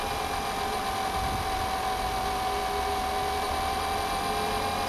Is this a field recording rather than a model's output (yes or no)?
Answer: yes